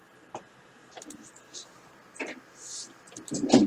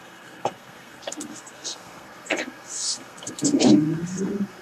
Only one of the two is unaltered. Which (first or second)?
first